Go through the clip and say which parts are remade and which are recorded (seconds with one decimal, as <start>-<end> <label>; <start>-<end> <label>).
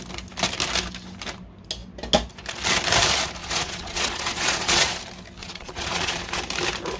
0.0-3.4 recorded; 3.4-5.0 remade; 5.0-5.4 recorded; 5.4-6.4 remade; 6.4-7.0 recorded